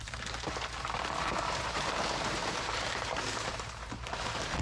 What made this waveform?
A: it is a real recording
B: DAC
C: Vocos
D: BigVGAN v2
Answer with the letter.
D